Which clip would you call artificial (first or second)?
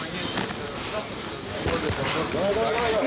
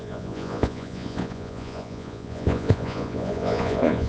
second